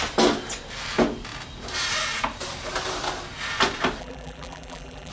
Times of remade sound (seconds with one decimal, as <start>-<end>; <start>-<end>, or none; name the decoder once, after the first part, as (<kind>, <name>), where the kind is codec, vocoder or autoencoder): 4.0-5.1 (vocoder, BigVGAN v2)